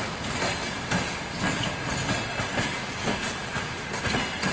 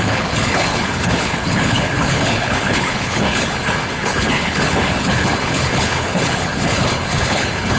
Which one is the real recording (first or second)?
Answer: first